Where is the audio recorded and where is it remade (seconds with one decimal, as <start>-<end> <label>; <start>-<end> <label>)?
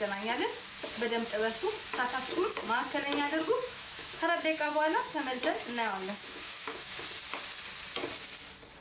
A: 0.0-3.6 recorded; 3.6-5.4 remade; 5.4-6.1 recorded; 6.1-7.0 remade; 7.0-8.8 recorded